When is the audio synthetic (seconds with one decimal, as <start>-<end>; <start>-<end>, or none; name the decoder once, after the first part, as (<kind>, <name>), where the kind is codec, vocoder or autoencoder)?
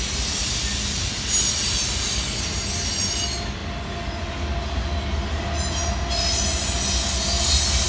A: none